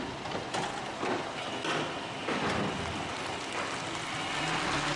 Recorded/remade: recorded